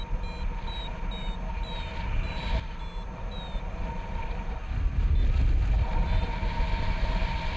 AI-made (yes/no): no